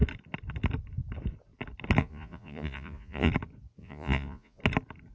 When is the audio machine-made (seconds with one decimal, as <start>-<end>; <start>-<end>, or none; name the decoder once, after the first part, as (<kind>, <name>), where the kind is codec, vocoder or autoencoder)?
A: 2.0-3.3 (vocoder, Vocos); 3.8-4.6